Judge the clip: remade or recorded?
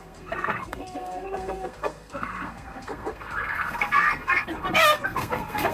remade